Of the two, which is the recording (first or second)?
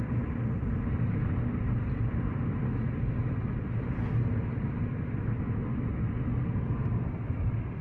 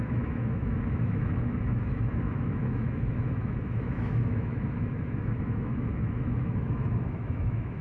first